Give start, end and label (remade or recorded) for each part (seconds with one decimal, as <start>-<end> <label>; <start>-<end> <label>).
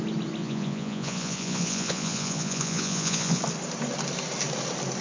0.0-0.4 recorded; 0.4-3.4 remade; 3.4-5.0 recorded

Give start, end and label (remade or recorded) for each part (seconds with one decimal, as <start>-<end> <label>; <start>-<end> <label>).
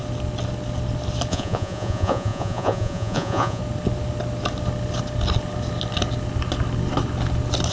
0.0-1.3 recorded; 1.3-3.6 remade; 3.6-7.7 recorded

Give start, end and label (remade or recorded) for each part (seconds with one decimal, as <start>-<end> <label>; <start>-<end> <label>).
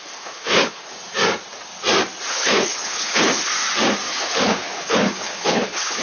0.0-0.9 remade; 0.9-2.3 recorded; 2.3-3.5 remade; 3.5-4.1 recorded; 4.1-6.0 remade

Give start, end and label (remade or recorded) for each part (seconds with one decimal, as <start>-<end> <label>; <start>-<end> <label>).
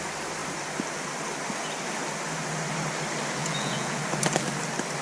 0.0-3.4 recorded; 3.4-4.0 remade; 4.0-5.0 recorded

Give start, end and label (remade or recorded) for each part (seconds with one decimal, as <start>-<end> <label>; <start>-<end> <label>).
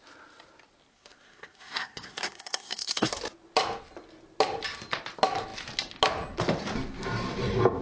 0.0-0.9 recorded; 0.9-3.1 remade; 3.1-7.8 recorded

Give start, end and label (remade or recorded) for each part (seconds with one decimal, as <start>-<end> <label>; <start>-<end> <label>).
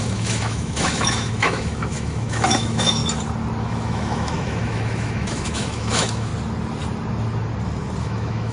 0.0-3.0 remade; 3.0-3.6 recorded; 3.6-6.3 remade; 6.3-8.0 recorded; 8.0-8.5 remade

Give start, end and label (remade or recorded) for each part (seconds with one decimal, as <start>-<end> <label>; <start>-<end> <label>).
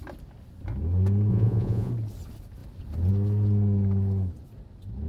0.0-1.3 recorded; 1.3-1.9 remade; 1.9-5.1 recorded